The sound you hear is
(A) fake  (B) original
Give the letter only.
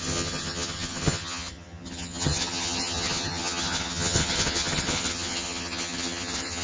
A